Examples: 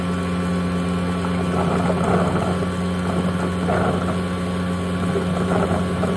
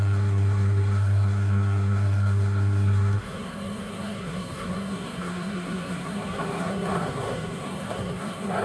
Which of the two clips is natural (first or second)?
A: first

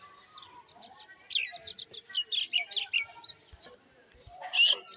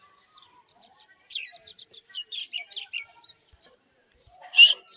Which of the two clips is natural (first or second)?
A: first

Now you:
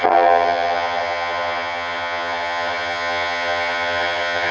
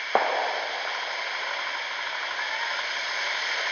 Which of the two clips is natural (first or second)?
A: second